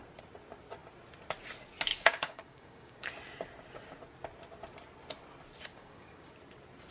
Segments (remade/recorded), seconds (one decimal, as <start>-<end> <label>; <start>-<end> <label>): 0.0-1.9 recorded; 1.9-3.1 remade; 3.1-5.7 recorded; 5.7-6.3 remade; 6.3-6.9 recorded